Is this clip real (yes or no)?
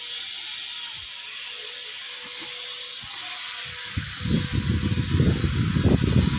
yes